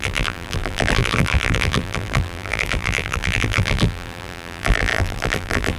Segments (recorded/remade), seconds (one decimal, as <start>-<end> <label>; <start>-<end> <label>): 0.0-5.8 remade